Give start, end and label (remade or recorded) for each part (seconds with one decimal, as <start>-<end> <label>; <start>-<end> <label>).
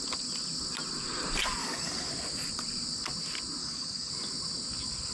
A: 0.0-1.6 recorded; 1.6-2.1 remade; 2.1-3.6 recorded; 3.6-4.1 remade; 4.1-5.1 recorded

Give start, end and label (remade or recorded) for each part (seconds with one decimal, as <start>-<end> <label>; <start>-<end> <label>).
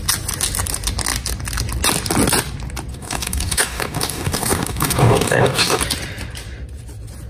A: 0.0-2.9 recorded; 2.9-5.8 remade; 5.8-7.3 recorded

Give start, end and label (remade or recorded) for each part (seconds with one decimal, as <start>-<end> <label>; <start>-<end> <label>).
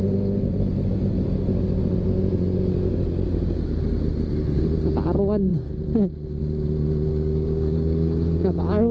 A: 0.0-7.1 recorded; 7.1-8.9 remade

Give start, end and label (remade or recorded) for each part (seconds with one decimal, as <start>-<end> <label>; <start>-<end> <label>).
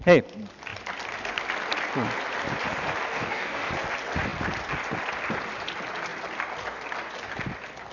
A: 0.0-3.1 recorded; 3.1-3.7 remade; 3.7-7.9 recorded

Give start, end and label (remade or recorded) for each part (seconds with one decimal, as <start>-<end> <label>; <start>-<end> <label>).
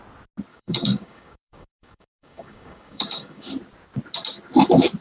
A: 0.0-0.5 recorded; 0.5-3.5 remade; 3.5-5.0 recorded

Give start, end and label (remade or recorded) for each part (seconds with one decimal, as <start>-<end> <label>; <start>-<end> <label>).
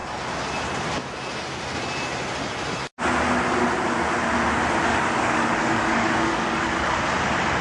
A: 0.0-4.9 recorded; 4.9-7.0 remade; 7.0-7.6 recorded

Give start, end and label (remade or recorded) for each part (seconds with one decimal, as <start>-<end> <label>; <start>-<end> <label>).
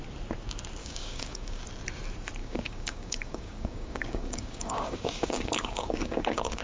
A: 0.0-0.8 recorded; 0.8-1.6 remade; 1.6-2.4 recorded; 2.4-6.6 remade